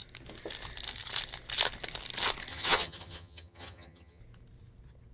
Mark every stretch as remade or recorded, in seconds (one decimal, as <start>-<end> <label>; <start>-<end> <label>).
0.0-2.5 recorded; 2.5-4.2 remade; 4.2-5.1 recorded